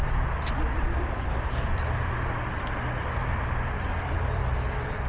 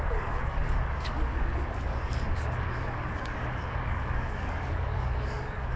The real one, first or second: first